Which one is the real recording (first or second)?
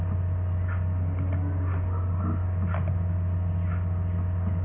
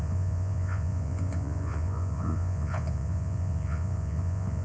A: first